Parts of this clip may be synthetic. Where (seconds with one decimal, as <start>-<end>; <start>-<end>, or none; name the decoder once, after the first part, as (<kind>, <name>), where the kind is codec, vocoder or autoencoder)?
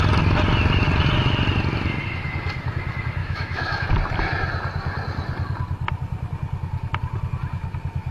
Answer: 3.2-3.9 (autoencoder, DAC-VAE)